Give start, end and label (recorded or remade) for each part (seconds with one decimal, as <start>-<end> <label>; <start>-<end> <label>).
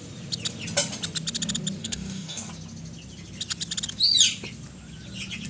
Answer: 0.0-1.8 recorded; 1.8-2.5 remade; 2.5-5.5 recorded